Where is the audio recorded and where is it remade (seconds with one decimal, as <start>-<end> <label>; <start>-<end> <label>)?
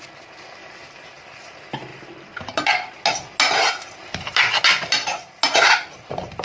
0.0-6.4 recorded